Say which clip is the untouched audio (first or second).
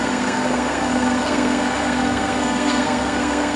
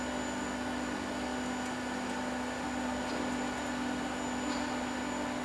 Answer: second